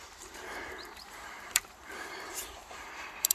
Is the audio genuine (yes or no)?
no